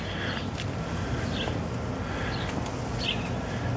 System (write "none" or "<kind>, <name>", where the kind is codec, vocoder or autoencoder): none